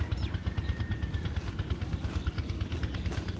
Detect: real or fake real